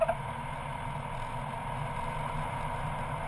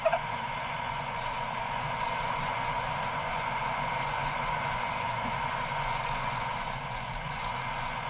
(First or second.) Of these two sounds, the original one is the first